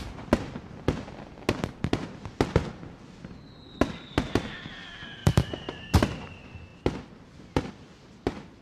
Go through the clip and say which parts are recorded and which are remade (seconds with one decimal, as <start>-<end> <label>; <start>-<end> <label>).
0.0-5.2 recorded; 5.2-5.9 remade; 5.9-8.6 recorded